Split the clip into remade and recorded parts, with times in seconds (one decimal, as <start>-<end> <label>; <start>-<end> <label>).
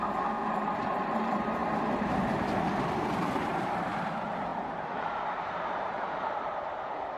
0.0-7.2 remade